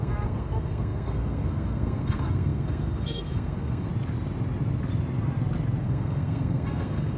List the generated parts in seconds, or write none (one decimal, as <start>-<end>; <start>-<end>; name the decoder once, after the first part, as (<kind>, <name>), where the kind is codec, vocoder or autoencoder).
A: 0.0-3.9 (codec, SNAC); 5.8-7.2